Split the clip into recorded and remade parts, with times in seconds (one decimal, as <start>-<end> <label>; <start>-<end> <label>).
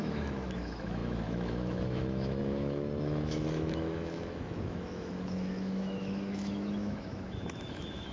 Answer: 0.0-8.1 remade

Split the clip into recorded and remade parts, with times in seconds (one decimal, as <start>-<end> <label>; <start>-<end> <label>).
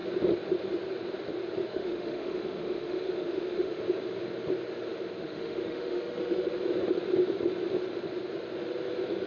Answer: 0.0-1.7 recorded; 1.7-3.8 remade; 3.8-5.2 recorded; 5.2-6.6 remade; 6.6-9.3 recorded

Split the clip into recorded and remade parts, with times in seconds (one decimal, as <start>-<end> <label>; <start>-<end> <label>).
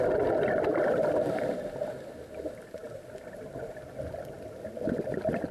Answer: 0.0-5.5 recorded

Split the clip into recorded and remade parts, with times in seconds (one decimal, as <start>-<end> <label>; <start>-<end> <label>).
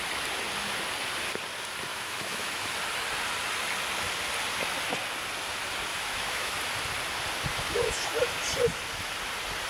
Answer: 0.0-1.9 recorded; 1.9-2.6 remade; 2.6-5.9 recorded; 5.9-6.5 remade; 6.5-7.5 recorded; 7.5-8.1 remade; 8.1-9.7 recorded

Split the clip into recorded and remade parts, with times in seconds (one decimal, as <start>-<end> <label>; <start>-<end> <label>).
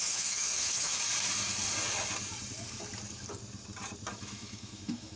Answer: 0.0-1.0 remade; 1.0-4.1 recorded; 4.1-5.2 remade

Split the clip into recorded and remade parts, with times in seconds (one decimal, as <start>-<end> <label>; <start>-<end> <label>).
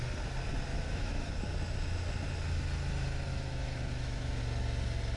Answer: 0.0-0.7 recorded; 0.7-1.3 remade; 1.3-3.3 recorded; 3.3-4.4 remade; 4.4-5.2 recorded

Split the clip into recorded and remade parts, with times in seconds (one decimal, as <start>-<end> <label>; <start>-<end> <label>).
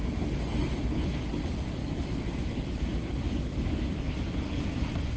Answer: 0.0-1.8 recorded; 1.8-2.8 remade; 2.8-3.5 recorded; 3.5-4.0 remade; 4.0-5.2 recorded